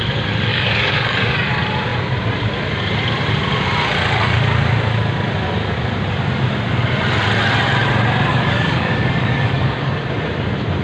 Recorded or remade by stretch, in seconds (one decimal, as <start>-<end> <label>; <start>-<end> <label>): 0.0-0.5 recorded; 0.5-1.5 remade; 1.5-8.3 recorded; 8.3-9.9 remade; 9.9-10.8 recorded